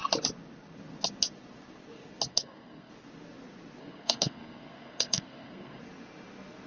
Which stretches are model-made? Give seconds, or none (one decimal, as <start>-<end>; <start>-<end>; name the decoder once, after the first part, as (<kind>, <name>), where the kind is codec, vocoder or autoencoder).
2.3-2.9 (codec, SNAC); 3.8-5.8